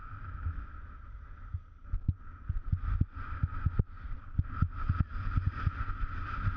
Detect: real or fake real